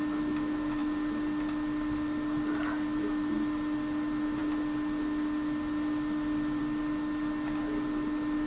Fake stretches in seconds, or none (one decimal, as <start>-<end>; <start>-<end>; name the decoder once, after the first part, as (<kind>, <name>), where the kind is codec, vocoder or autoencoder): none